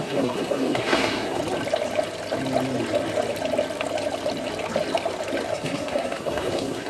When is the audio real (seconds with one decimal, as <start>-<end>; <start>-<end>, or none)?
1.4-5.5